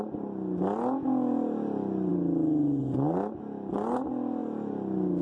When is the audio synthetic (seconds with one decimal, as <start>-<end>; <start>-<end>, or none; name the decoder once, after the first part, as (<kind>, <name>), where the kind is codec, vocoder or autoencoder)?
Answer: none